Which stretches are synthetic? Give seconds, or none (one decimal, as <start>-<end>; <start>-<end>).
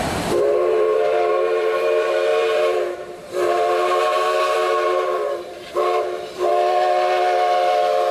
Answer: 0.0-6.5